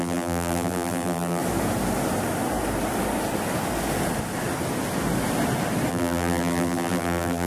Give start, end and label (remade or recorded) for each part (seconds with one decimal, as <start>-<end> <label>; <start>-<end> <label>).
0.0-1.4 remade; 1.4-5.9 recorded; 5.9-7.5 remade